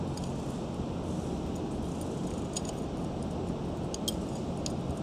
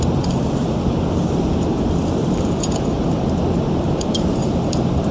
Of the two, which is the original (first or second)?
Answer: first